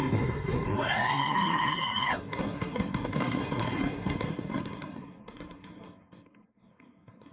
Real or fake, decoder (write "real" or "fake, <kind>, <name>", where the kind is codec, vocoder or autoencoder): fake, codec, SNAC